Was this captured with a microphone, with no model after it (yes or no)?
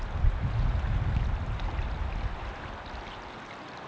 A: yes